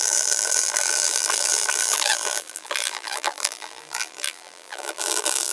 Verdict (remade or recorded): remade